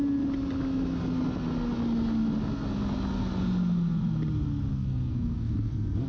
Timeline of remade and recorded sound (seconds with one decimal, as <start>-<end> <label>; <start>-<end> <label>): 0.0-4.7 recorded; 4.7-6.1 remade